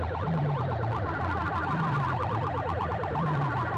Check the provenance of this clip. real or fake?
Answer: fake